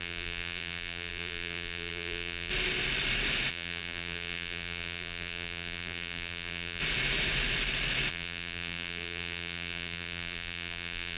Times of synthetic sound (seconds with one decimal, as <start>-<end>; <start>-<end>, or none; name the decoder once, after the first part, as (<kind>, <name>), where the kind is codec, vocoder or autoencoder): 0.0-2.5 (vocoder, BigVGAN v2); 3.5-6.8; 8.1-11.2